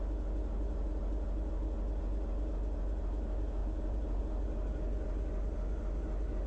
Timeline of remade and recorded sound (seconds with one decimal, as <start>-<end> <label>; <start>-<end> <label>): 0.0-3.6 recorded; 3.6-4.2 remade; 4.2-6.5 recorded